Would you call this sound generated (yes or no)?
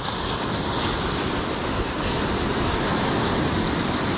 no